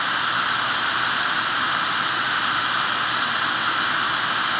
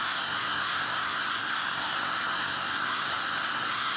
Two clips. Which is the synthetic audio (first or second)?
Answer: second